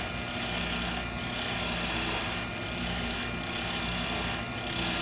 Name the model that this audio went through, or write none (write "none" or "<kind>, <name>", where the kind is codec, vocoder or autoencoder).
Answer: none